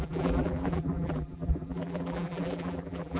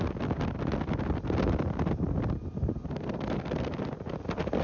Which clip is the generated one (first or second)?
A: first